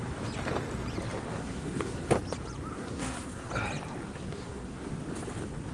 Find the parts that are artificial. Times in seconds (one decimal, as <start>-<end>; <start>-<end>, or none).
1.3-2.1; 2.7-3.5; 4.1-4.9